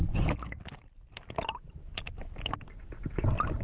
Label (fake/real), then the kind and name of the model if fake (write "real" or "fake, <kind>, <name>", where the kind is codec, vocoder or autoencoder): real